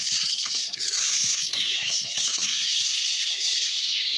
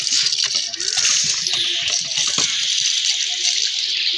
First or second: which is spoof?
first